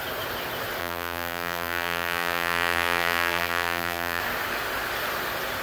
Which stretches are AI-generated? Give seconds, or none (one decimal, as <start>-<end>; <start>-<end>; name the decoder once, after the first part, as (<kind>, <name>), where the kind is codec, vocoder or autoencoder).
0.8-4.2 (vocoder, BigVGAN v2)